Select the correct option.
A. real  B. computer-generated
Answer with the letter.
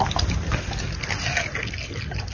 A